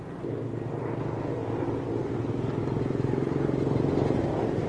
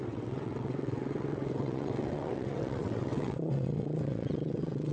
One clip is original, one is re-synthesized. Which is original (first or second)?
first